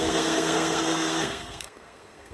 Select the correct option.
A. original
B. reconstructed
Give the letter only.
B